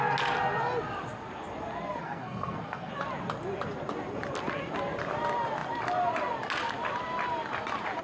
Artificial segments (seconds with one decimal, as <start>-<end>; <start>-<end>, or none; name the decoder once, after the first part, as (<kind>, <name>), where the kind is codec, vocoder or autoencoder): 2.0-2.9 (codec, SNAC)